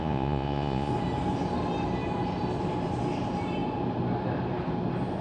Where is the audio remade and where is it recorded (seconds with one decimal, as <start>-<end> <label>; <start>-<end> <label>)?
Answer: 0.0-0.9 remade; 0.9-5.2 recorded